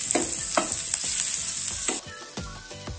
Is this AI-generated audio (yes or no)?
no